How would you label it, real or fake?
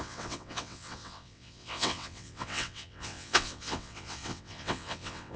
fake